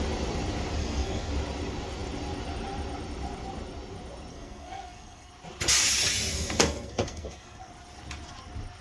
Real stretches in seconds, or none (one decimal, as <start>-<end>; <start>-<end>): 0.0-0.8; 1.3-4.3; 5.3-6.3; 7.7-8.8